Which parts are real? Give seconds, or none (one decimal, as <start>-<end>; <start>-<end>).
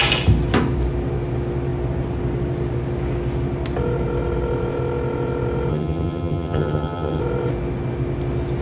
0.0-5.7; 7.2-8.6